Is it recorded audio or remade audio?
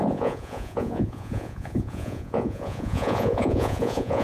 remade